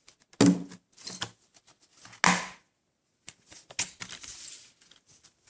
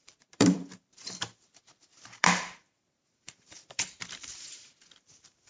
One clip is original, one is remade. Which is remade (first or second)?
second